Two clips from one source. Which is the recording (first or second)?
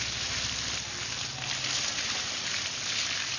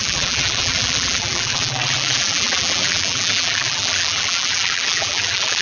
first